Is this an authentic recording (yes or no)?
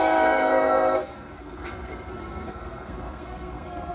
no